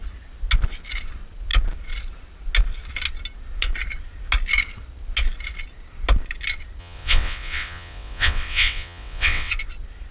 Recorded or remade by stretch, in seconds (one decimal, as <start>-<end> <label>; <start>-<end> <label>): 0.0-6.8 recorded; 6.8-9.5 remade; 9.5-10.1 recorded